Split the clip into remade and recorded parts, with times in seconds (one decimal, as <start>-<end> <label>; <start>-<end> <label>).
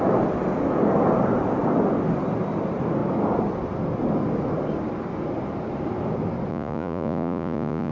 0.0-6.5 recorded; 6.5-7.9 remade